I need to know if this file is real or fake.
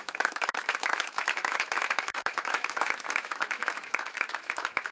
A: fake